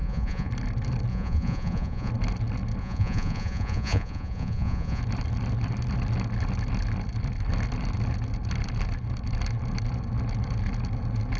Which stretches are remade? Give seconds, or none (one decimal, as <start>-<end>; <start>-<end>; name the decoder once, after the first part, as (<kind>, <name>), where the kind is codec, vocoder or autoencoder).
0.0-0.5 (vocoder, Vocos); 1.1-2.1; 2.8-5.0